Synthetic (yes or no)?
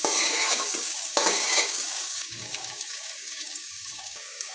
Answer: yes